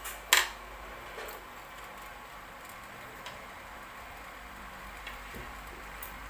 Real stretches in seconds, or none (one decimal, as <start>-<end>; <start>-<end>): 0.0-2.1